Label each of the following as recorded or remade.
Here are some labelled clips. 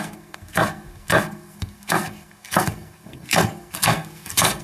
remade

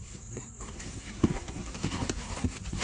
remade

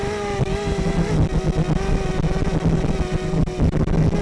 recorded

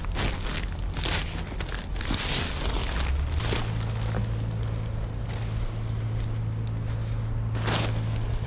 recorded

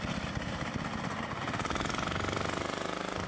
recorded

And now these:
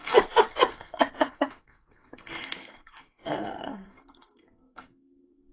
remade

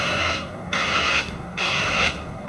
remade